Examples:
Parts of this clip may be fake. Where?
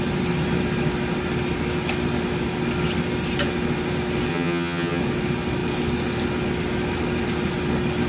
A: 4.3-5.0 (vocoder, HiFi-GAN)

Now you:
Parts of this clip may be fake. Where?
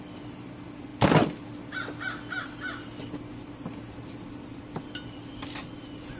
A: none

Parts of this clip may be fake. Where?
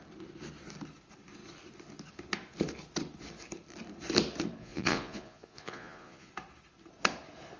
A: 4.6-6.3 (vocoder, Vocos)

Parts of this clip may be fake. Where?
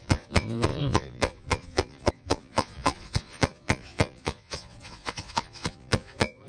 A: 0.0-6.5 (vocoder, Vocos)